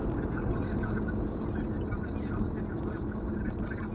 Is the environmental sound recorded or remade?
recorded